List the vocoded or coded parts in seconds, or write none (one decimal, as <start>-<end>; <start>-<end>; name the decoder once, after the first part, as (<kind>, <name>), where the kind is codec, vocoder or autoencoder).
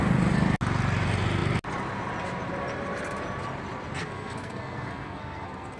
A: 4.0-5.8 (codec, SNAC)